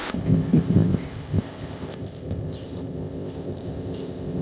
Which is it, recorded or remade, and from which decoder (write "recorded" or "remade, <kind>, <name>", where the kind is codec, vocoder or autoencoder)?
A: remade, codec, ZipCodec